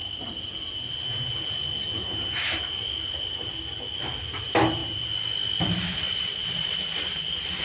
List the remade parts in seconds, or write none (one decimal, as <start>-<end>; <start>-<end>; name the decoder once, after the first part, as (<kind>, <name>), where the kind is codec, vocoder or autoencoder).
4.2-4.8 (vocoder, BigVGAN v2); 5.8-7.6